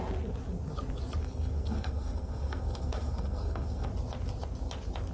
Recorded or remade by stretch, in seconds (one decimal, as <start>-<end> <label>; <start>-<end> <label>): 0.0-1.2 recorded; 1.2-3.9 remade; 3.9-5.1 recorded

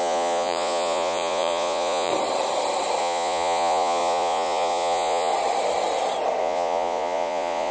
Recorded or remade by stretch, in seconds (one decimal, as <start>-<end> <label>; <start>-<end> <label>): 0.0-2.1 remade; 2.1-3.0 recorded; 3.0-5.3 remade; 5.3-6.4 recorded; 6.4-7.7 remade

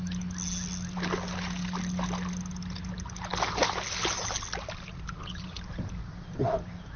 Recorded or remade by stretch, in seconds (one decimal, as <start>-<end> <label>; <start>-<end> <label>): 0.0-7.0 recorded